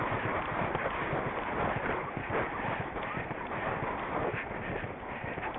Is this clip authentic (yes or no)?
yes